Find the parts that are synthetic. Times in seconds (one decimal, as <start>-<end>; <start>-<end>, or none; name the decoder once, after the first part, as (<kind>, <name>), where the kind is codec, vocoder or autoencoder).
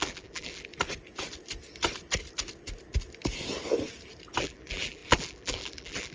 0.0-0.7 (vocoder, BigVGAN v2); 4.4-6.1